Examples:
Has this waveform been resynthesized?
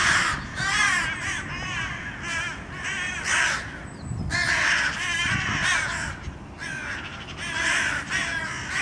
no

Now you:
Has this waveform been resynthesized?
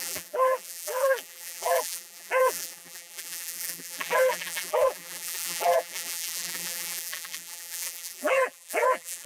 yes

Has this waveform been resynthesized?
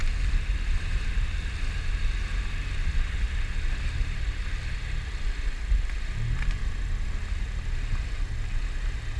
no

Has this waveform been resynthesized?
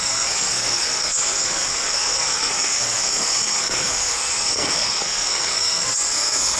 yes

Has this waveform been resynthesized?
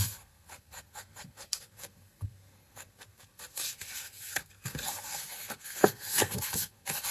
yes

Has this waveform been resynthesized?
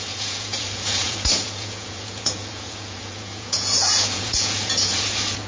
yes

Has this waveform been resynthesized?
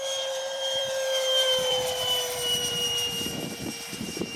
yes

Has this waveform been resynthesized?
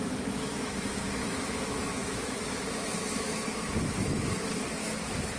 yes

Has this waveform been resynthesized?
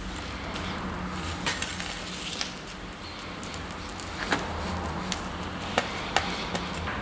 no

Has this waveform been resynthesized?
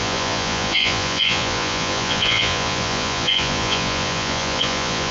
yes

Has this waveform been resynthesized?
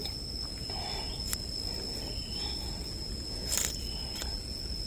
no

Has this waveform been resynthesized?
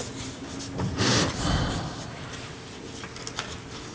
no